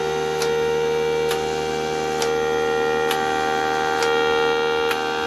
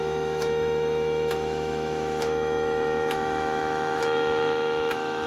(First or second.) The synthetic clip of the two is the second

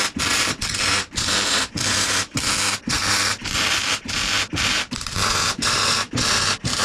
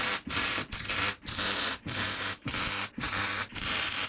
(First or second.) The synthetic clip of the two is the first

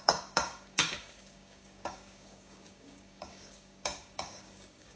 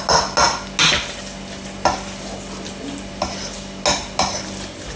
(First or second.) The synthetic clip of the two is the first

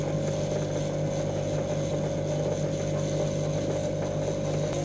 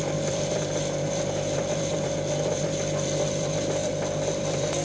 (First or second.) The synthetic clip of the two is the second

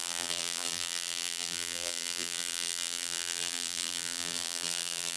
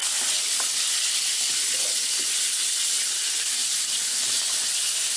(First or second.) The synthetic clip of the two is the first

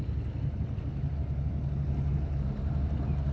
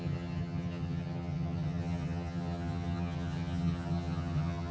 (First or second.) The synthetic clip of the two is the second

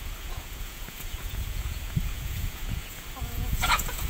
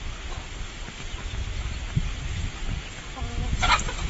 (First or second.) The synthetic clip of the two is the first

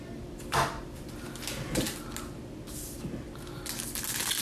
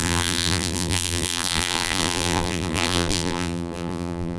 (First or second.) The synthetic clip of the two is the second